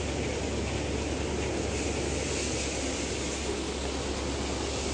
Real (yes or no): yes